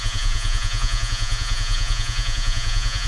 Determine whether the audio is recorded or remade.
remade